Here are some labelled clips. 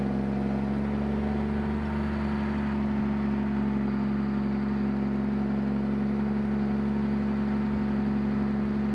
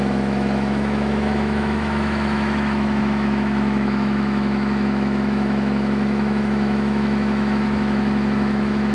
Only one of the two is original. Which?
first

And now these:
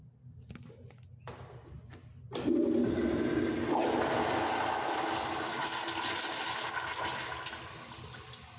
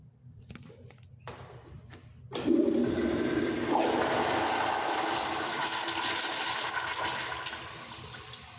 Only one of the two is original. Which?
first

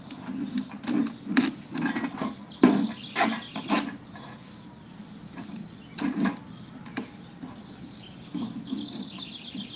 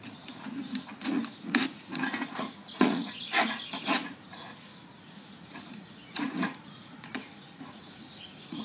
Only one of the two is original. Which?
first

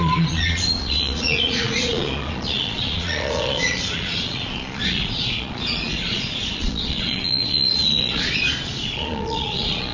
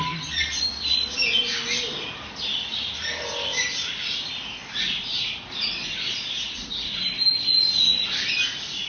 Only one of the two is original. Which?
second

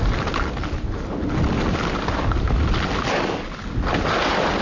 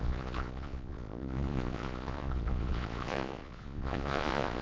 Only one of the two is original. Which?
first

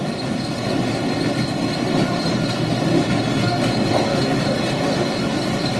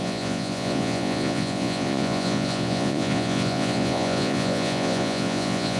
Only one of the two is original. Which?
first